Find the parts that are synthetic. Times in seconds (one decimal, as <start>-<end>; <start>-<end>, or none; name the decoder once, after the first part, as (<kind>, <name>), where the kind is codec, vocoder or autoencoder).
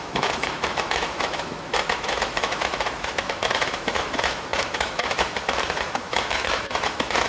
0.0-7.3 (autoencoder, DAC-VAE)